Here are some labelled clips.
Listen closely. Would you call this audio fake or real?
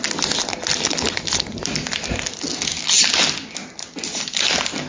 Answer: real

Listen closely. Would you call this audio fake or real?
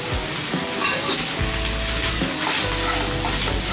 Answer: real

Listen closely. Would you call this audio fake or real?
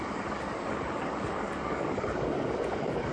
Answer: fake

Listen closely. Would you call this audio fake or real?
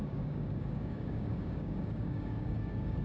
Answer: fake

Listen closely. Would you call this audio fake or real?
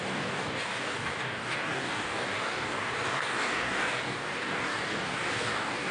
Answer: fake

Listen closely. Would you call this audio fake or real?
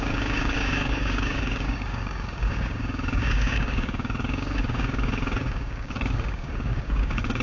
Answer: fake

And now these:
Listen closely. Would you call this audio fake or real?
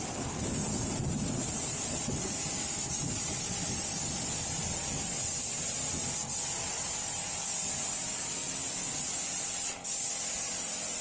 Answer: real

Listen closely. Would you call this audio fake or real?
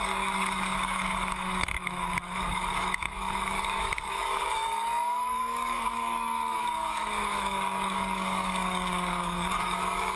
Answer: fake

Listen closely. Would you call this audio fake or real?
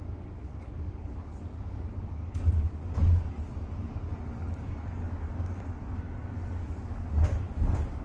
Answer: fake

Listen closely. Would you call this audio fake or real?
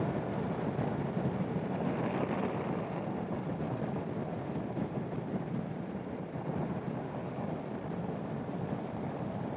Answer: real